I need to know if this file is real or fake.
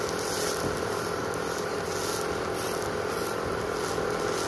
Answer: real